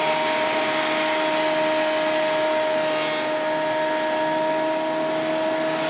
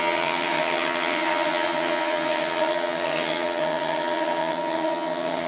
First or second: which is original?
first